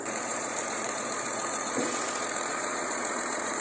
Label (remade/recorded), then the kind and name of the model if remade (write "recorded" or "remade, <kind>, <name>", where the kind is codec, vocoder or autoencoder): remade, vocoder, Vocos